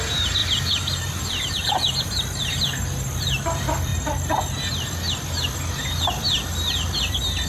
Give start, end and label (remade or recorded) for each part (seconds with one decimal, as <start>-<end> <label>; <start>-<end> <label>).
0.0-3.9 remade; 3.9-7.1 recorded; 7.1-7.5 remade